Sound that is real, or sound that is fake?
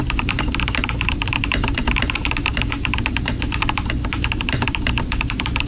fake